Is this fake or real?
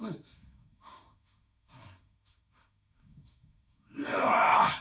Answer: fake